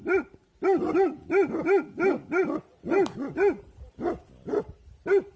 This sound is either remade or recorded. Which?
recorded